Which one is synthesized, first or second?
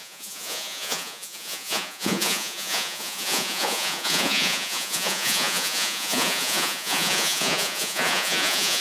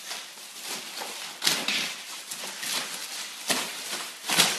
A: first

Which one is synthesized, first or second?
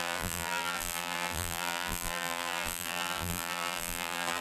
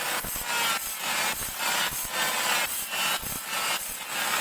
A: first